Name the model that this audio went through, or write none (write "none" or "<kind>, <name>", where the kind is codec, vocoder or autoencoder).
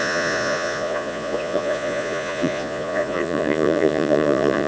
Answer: vocoder, Vocos